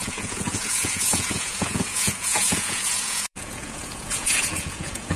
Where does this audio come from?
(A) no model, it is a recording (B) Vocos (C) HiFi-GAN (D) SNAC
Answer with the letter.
B